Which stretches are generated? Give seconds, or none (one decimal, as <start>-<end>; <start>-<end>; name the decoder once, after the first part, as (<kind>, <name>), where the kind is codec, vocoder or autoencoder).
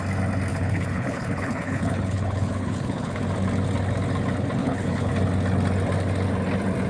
0.5-3.2 (codec, HILCodec); 4.6-5.1